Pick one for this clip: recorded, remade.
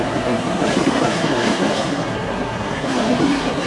remade